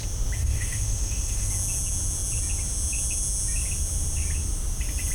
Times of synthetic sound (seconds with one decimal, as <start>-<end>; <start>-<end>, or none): 0.4-1.5